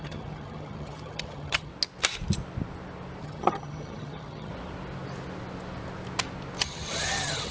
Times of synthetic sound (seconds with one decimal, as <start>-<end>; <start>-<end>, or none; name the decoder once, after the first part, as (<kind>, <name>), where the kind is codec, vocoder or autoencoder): 0.0-1.7 (vocoder, HiFi-GAN); 3.2-4.5; 6.6-7.5